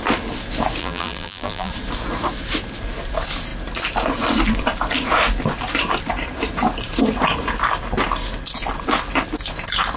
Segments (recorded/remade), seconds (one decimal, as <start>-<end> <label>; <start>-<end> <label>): 0.0-0.8 recorded; 0.8-1.7 remade; 1.7-10.0 recorded